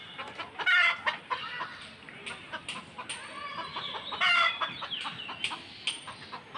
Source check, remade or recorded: recorded